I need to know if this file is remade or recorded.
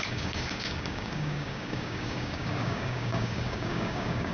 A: remade